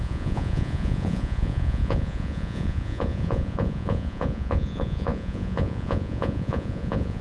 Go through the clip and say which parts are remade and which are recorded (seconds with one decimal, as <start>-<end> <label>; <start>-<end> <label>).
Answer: 0.0-7.2 remade